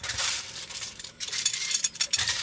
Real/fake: fake